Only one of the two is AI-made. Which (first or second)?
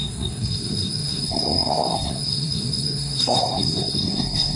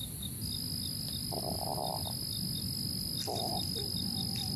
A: first